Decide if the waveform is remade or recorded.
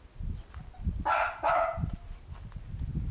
recorded